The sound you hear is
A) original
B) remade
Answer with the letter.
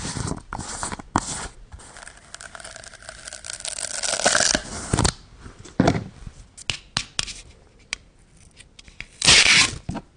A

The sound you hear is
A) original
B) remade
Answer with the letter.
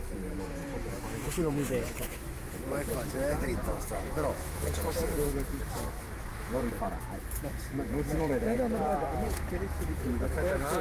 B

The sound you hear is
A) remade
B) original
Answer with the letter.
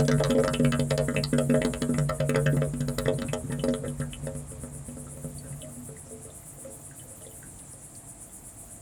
B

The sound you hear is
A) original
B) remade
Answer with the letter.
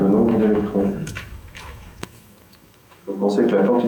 B